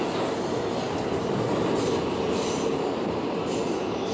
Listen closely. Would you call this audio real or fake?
real